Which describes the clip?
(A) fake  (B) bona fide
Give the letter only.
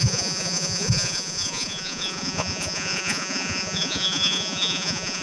A